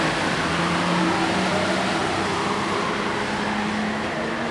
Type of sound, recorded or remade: recorded